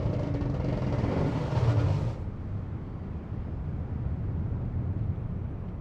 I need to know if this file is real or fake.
real